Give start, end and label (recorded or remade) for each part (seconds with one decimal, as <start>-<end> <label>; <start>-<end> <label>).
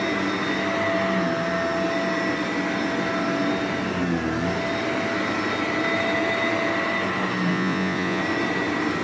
0.0-7.5 recorded; 7.5-8.2 remade; 8.2-9.0 recorded